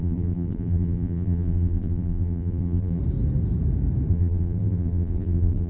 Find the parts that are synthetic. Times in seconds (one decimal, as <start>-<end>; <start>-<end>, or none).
0.0-3.0; 4.1-5.7